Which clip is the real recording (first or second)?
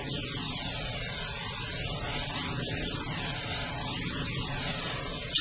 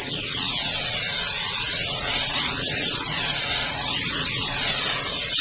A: first